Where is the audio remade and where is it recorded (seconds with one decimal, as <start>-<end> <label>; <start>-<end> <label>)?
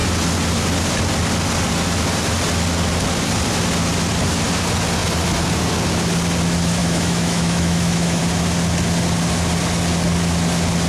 0.0-6.8 recorded; 6.8-8.2 remade; 8.2-10.9 recorded